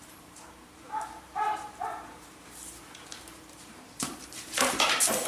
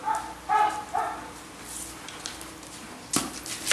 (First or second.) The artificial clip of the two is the first